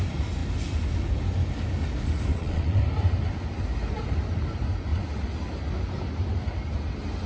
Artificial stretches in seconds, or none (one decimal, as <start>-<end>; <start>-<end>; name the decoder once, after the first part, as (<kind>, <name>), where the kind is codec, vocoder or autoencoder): 2.3-2.8 (vocoder, WaveNeXt)